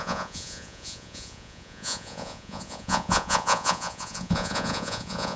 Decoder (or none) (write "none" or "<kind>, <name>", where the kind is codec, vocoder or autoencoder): vocoder, Vocos